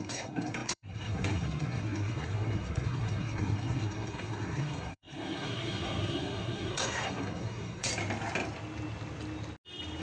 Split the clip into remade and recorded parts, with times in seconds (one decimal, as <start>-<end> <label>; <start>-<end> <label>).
0.0-7.9 remade; 7.9-10.0 recorded